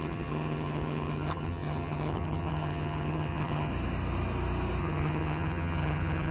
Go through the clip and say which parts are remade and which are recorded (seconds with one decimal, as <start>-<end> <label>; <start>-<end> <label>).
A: 0.0-3.7 remade; 3.7-4.8 recorded; 4.8-6.3 remade